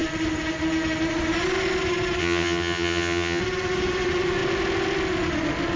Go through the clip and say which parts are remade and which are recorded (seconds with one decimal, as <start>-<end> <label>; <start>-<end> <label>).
0.0-2.2 recorded; 2.2-3.4 remade; 3.4-5.8 recorded